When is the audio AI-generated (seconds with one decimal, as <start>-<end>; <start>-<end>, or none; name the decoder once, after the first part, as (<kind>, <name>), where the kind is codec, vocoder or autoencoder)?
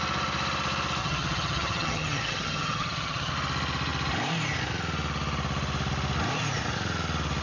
1.0-3.3 (vocoder, HiFi-GAN)